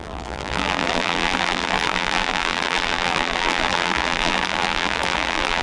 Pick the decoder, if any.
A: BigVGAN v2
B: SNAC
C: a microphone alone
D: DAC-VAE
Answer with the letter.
A